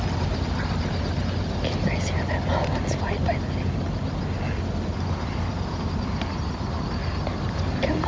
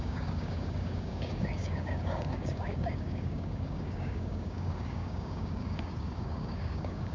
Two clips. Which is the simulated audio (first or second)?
second